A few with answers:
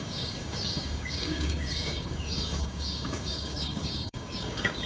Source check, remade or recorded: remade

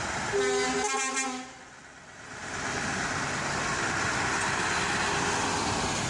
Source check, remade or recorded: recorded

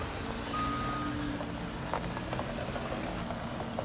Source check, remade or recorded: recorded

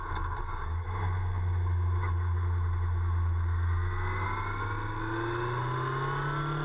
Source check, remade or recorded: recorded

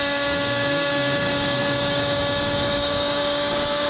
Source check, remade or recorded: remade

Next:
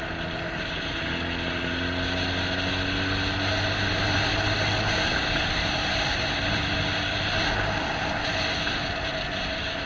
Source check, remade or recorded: recorded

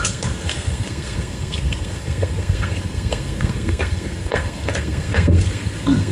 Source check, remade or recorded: remade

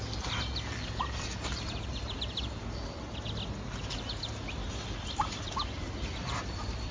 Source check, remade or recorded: recorded